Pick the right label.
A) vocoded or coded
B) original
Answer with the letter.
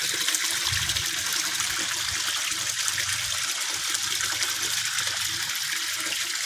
A